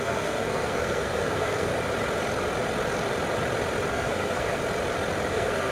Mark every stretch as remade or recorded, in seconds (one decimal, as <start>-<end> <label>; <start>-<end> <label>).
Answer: 0.0-1.7 remade; 1.7-3.9 recorded; 3.9-4.6 remade; 4.6-5.3 recorded; 5.3-5.7 remade